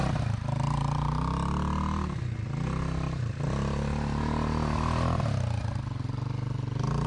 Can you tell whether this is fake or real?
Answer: real